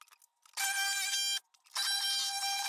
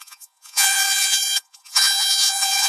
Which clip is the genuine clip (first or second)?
first